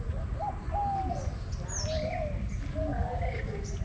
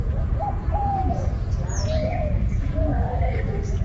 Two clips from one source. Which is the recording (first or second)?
first